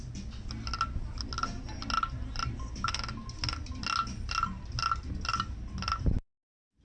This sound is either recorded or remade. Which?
recorded